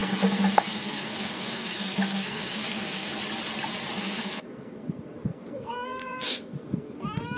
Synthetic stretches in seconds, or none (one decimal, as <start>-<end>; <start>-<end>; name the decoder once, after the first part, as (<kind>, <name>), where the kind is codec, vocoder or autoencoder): 0.0-3.1 (codec, SNAC); 4.0-7.4